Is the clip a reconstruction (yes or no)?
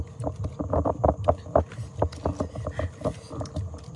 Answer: no